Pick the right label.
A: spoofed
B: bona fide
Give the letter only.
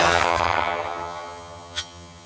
A